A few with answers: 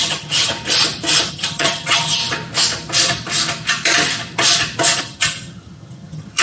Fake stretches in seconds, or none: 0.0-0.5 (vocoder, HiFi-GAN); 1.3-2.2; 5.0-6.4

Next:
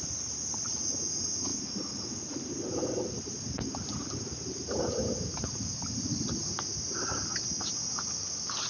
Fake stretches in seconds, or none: 5.7-6.4 (vocoder, BigVGAN v2)

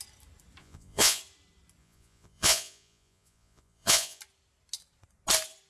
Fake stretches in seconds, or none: 0.6-1.2 (vocoder, Vocos); 1.8-4.2

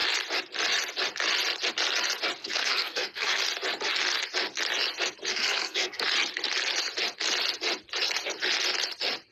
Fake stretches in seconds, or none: 2.4-3.4 (codec, SNAC); 5.3-6.0